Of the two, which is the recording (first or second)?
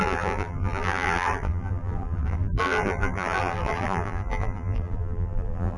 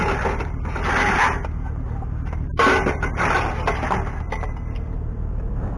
second